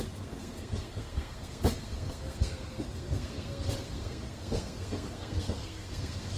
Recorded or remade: remade